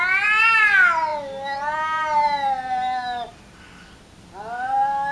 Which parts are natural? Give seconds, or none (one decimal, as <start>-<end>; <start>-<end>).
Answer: 0.0-5.1

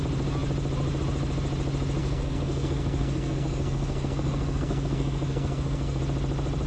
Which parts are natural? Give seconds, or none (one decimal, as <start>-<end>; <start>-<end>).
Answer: 0.0-2.0; 6.0-6.7